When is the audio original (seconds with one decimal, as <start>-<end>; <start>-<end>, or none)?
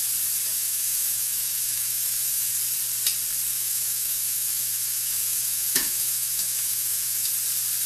0.0-0.5; 2.5-3.5; 7.3-7.9